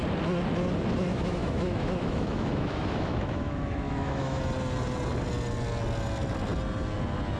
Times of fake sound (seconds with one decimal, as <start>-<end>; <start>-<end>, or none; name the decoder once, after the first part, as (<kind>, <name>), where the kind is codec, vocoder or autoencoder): 1.1-4.4 (autoencoder, DAC-VAE)